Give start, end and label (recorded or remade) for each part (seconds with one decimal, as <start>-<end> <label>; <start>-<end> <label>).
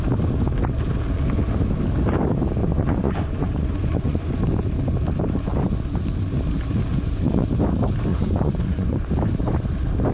0.0-2.6 recorded; 2.6-4.4 remade; 4.4-6.9 recorded; 6.9-7.5 remade; 7.5-8.1 recorded; 8.1-9.1 remade; 9.1-10.1 recorded